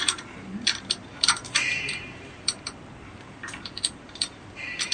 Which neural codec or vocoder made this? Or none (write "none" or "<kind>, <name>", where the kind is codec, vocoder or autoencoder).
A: vocoder, BigVGAN v2